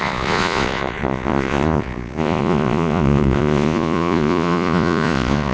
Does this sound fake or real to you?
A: fake